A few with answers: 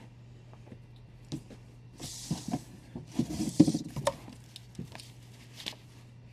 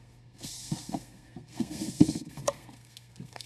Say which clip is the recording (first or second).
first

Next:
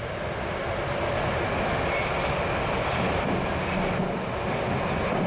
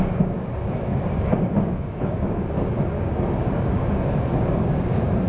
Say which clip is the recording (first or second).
first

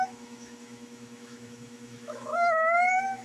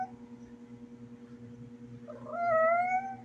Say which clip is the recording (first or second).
second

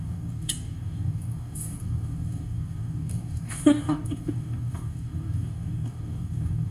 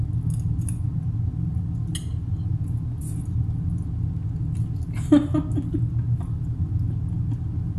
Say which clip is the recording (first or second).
second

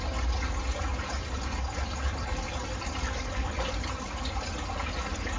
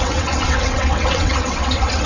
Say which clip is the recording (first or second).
first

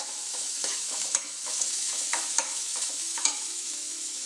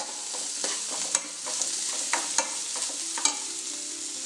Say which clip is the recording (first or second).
second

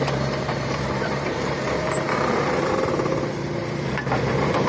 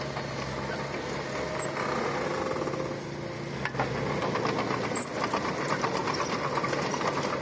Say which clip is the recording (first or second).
second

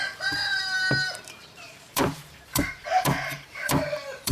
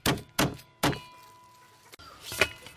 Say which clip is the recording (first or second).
second